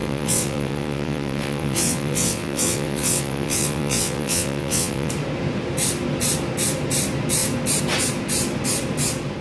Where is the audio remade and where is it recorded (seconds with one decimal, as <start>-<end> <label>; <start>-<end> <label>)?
0.0-5.1 remade; 5.1-9.4 recorded